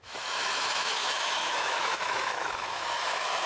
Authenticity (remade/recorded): remade